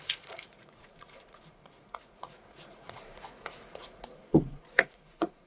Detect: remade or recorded remade